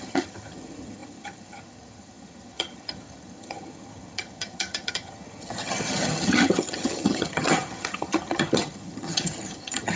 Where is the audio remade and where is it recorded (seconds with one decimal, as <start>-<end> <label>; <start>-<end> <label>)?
0.0-10.0 remade